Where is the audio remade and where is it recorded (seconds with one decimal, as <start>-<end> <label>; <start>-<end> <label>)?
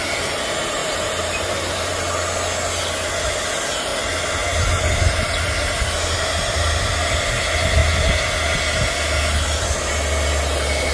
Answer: 0.0-0.8 recorded; 0.8-2.1 remade; 2.1-10.9 recorded